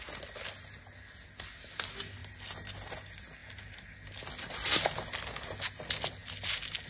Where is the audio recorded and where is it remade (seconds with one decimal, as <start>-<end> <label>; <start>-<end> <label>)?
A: 0.0-6.9 recorded